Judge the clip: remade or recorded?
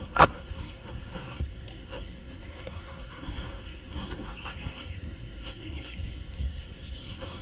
remade